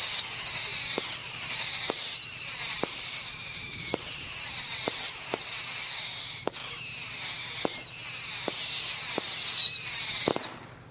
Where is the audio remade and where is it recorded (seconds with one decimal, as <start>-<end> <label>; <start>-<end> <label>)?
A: 0.0-1.2 recorded; 1.2-5.1 remade; 5.1-8.0 recorded; 8.0-8.8 remade; 8.8-10.9 recorded